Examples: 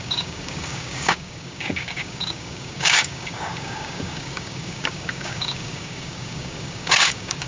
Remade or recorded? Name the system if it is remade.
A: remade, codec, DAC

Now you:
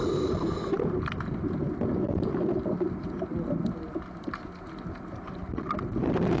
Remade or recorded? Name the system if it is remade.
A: recorded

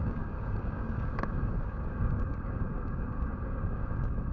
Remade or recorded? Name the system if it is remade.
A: remade, codec, DAC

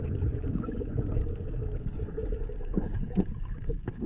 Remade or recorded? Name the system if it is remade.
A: remade, codec, DAC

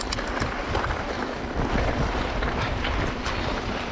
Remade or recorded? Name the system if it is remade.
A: recorded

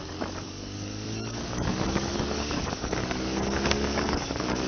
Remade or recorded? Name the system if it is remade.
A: remade, codec, DAC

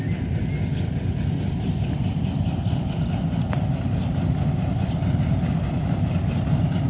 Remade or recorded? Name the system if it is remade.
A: recorded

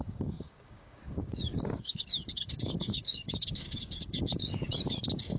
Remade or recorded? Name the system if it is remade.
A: remade, codec, DAC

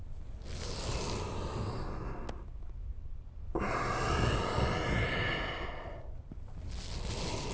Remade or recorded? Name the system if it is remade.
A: recorded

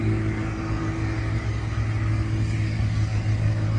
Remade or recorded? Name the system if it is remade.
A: remade, codec, DAC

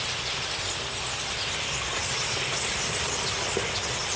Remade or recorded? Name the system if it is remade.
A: recorded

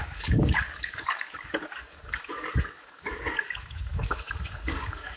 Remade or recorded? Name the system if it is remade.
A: remade, codec, DAC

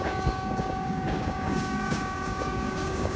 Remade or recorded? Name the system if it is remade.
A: remade, codec, DAC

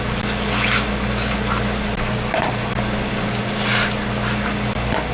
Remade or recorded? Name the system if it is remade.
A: recorded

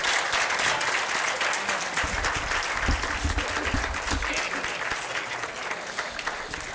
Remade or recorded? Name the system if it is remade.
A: recorded